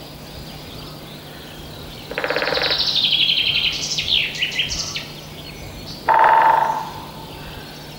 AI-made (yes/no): no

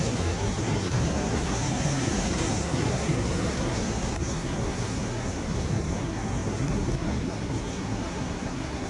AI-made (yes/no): yes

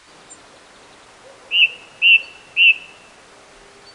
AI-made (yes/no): no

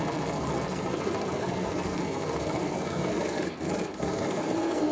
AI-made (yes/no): yes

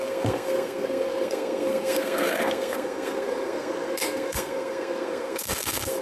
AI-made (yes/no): yes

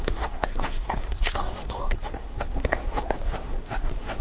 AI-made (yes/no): yes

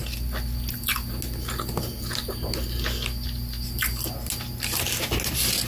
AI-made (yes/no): no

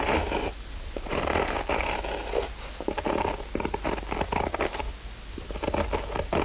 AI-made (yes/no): no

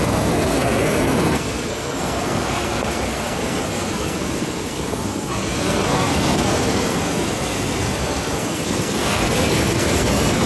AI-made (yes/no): yes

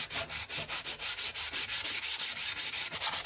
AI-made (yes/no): no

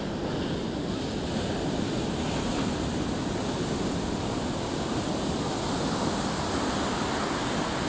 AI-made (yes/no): no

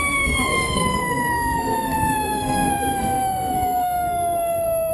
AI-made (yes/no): yes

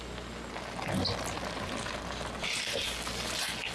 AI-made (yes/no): no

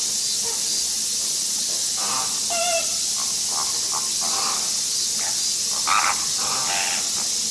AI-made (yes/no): no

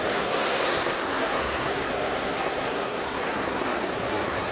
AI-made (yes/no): yes